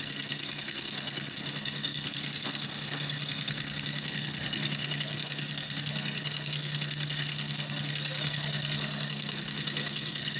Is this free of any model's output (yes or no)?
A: no